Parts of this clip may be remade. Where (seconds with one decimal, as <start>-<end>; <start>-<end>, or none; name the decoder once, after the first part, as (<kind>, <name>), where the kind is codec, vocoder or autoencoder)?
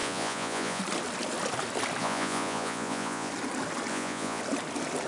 0.0-0.8 (vocoder, Vocos); 2.0-3.3; 3.9-4.4